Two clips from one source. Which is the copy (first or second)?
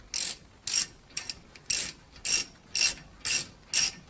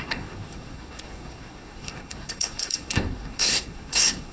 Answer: second